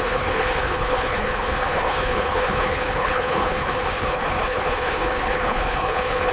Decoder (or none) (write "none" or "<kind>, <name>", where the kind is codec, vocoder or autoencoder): codec, HILCodec